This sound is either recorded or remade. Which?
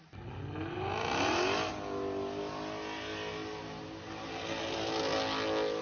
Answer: recorded